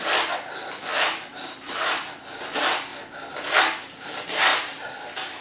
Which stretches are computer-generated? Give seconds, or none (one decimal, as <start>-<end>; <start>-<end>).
0.9-2.1; 4.5-5.4